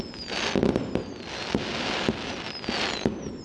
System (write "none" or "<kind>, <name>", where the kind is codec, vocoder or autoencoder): none